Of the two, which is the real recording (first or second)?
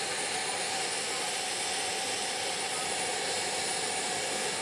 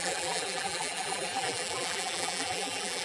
first